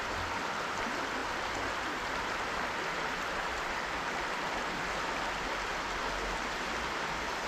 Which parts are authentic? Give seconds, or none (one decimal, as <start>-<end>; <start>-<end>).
0.0-7.5

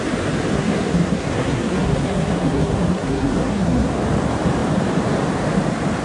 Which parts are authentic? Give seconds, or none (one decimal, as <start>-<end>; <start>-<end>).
0.0-0.5; 3.9-6.0

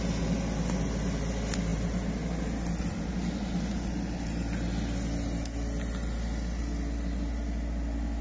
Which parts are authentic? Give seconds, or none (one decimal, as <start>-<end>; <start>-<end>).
0.0-8.2

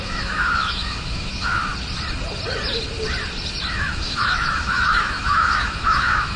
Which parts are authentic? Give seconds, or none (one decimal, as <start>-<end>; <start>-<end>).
1.7-3.7